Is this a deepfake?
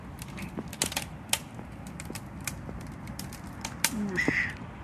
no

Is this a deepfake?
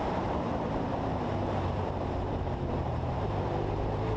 yes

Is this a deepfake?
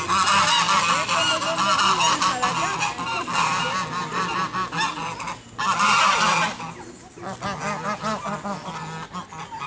no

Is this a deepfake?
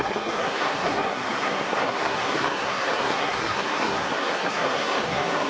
yes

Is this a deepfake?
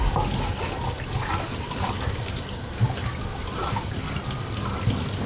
no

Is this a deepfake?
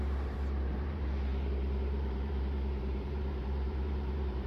yes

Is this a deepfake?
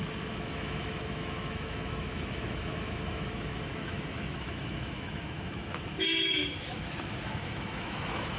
yes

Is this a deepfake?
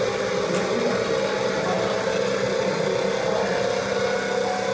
no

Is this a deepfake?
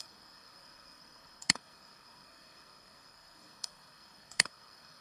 yes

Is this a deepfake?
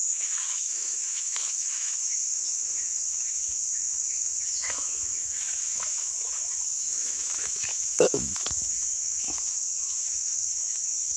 yes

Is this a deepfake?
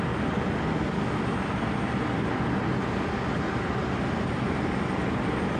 no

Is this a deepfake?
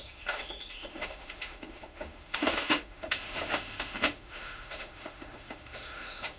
yes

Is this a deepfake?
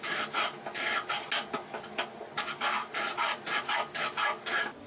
no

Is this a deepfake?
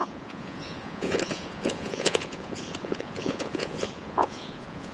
yes